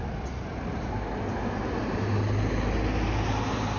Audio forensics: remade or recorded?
recorded